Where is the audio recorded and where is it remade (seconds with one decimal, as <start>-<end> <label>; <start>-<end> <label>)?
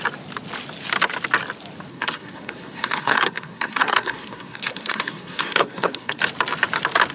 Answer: 0.0-1.9 recorded; 1.9-6.2 remade; 6.2-7.1 recorded